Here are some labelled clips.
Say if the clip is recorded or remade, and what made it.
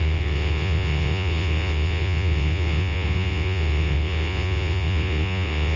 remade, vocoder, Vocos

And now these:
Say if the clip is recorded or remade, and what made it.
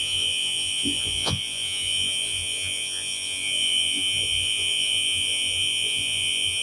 remade, vocoder, Vocos